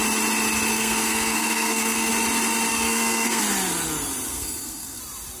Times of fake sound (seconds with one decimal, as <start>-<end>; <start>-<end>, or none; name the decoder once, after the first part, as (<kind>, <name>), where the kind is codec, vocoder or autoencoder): 0.7-2.1 (codec, SNAC); 2.7-3.4; 4.3-5.0